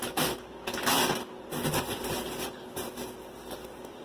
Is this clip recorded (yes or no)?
yes